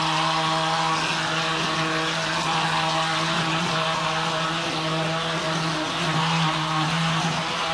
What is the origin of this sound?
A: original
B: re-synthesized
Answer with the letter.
A